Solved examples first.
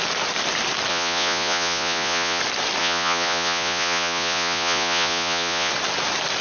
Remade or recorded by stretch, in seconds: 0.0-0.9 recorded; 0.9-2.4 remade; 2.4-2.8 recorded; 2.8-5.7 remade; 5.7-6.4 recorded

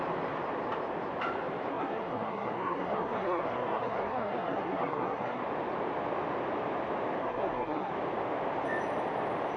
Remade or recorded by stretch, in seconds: 0.0-1.7 recorded; 1.7-5.4 remade; 5.4-7.2 recorded; 7.2-7.9 remade; 7.9-9.6 recorded

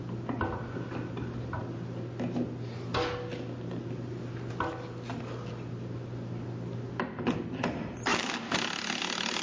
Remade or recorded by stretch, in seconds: 0.0-9.4 recorded